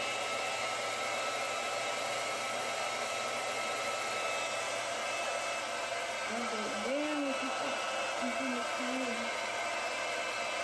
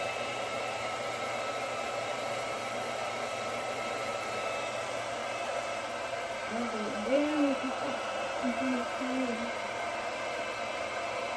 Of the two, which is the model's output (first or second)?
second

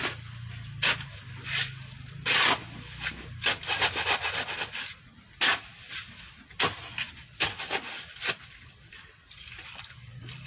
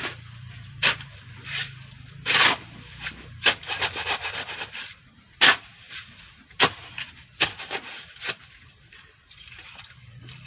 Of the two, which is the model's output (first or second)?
second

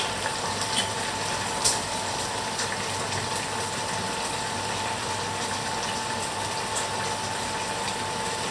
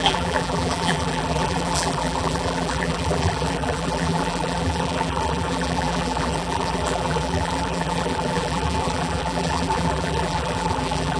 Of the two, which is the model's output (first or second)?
second